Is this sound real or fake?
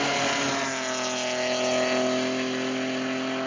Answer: real